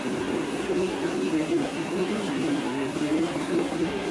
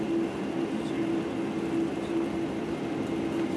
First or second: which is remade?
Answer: first